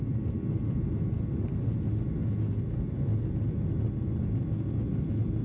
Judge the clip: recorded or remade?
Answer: recorded